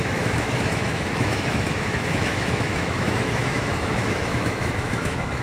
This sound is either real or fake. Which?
fake